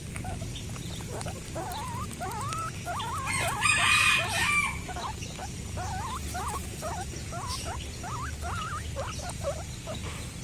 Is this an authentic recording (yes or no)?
yes